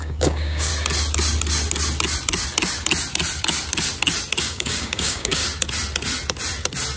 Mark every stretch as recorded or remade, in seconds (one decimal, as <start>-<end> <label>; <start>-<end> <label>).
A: 0.0-0.7 remade; 0.7-4.4 recorded; 4.4-5.4 remade; 5.4-7.0 recorded

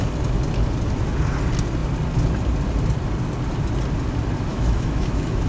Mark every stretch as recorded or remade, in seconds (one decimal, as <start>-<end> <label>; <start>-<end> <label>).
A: 0.0-4.5 recorded; 4.5-5.5 remade

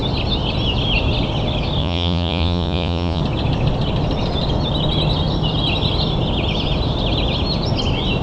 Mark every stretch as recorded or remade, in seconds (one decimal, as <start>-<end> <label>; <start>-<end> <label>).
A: 0.0-1.8 recorded; 1.8-3.2 remade; 3.2-8.2 recorded

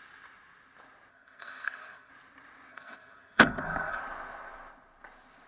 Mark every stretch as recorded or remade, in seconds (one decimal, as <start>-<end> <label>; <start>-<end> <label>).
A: 0.0-1.1 recorded; 1.1-2.1 remade; 2.1-2.7 recorded; 2.7-4.0 remade; 4.0-5.5 recorded

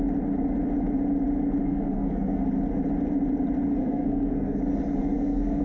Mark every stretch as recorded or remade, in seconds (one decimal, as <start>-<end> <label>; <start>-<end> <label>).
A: 0.0-1.6 recorded; 1.6-2.4 remade; 2.4-3.8 recorded; 3.8-4.6 remade; 4.6-5.0 recorded; 5.0-5.6 remade

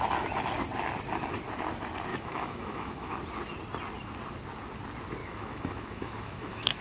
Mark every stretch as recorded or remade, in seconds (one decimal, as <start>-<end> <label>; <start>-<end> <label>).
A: 0.0-2.1 recorded; 2.1-3.2 remade; 3.2-5.2 recorded; 5.2-6.8 remade

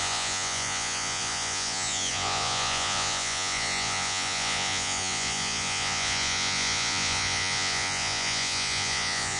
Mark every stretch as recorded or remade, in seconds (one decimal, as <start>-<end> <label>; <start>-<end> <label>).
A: 0.0-9.4 remade